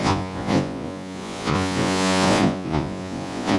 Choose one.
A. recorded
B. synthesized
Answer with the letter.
B